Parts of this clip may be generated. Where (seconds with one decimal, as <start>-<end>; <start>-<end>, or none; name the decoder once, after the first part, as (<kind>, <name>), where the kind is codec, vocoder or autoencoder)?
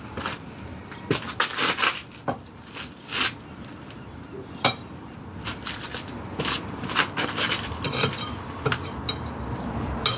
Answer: 0.0-1.5 (vocoder, BigVGAN v2); 3.3-10.2